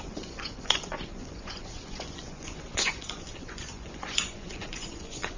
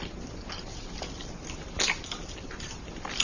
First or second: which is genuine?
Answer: second